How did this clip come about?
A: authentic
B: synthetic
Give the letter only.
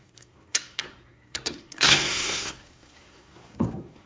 B